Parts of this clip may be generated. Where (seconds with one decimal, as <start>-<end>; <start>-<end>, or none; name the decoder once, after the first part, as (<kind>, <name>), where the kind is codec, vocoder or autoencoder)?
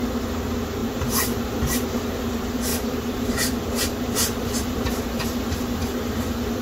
0.8-2.2 (vocoder, BigVGAN v2); 2.7-6.6